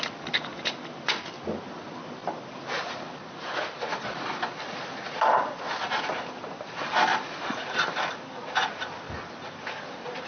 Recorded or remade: recorded